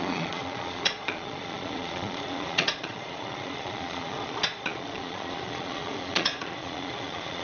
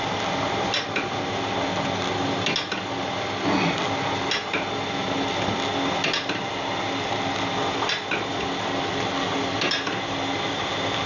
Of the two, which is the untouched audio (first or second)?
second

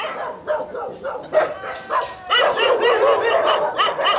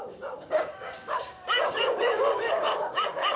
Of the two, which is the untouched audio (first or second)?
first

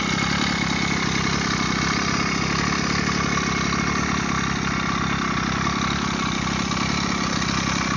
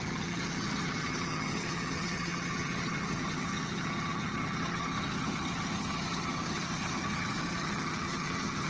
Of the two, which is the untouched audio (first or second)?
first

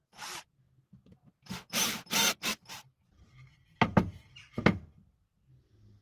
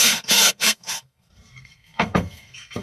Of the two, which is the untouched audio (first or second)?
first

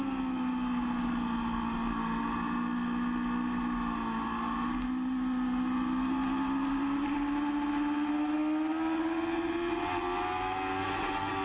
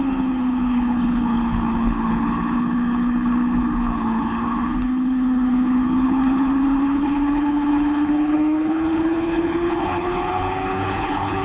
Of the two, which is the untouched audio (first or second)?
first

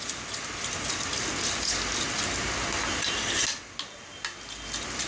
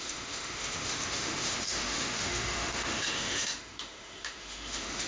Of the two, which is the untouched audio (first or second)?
first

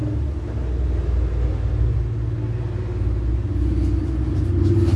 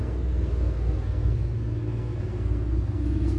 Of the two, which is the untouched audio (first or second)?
first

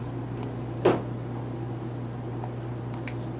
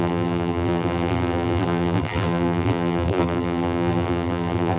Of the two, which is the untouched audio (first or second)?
first